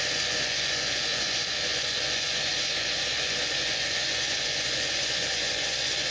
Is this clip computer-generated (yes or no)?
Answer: yes